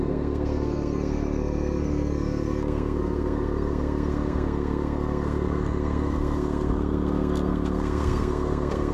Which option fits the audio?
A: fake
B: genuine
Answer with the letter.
A